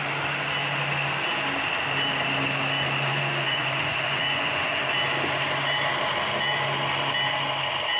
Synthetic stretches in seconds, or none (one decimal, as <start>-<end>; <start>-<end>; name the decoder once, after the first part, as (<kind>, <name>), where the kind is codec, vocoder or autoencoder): 3.1-4.8 (vocoder, Vocos)